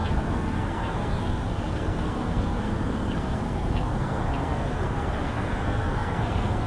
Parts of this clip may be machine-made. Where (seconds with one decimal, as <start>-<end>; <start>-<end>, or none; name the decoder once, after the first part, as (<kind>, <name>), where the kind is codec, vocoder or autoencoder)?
0.0-6.7 (codec, SNAC)